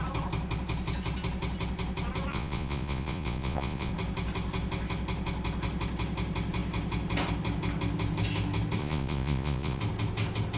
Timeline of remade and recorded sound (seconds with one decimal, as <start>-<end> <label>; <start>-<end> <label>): 0.0-2.3 recorded; 2.3-3.9 remade; 3.9-8.8 recorded; 8.8-9.8 remade; 9.8-10.6 recorded